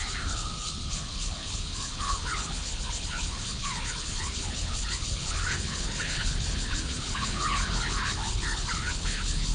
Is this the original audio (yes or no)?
no